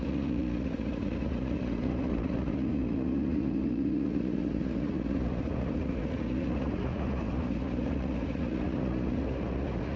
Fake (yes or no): yes